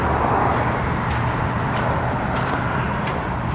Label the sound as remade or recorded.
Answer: recorded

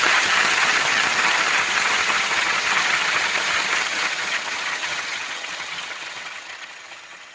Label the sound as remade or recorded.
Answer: remade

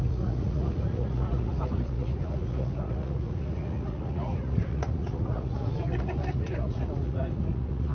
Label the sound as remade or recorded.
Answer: remade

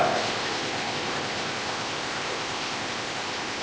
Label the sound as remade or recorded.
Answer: remade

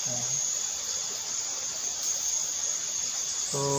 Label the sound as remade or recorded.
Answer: recorded